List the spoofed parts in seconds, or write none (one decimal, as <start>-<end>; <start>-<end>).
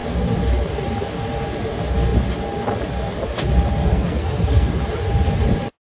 3.8-4.7